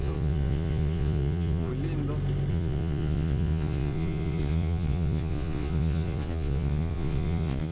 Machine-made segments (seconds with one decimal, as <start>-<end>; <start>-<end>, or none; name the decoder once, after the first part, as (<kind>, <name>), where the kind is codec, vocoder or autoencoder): 0.0-1.7 (vocoder, Vocos); 2.5-7.7